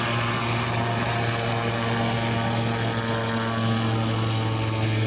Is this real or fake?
real